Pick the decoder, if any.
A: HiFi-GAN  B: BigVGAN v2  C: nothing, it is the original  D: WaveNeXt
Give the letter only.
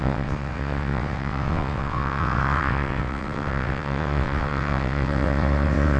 D